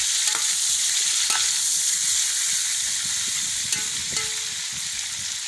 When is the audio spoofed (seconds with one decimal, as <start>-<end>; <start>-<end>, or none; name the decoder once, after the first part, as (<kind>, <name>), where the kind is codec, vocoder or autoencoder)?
none